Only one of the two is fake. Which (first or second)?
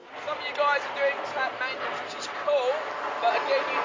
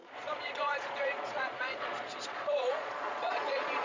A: second